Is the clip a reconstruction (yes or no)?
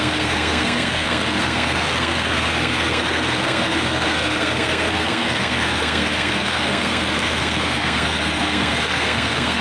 yes